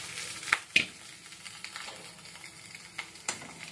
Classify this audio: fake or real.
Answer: real